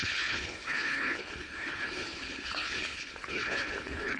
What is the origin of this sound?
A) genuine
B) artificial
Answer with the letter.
B